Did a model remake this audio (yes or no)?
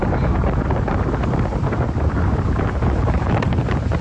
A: yes